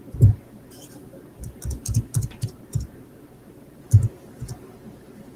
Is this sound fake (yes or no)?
yes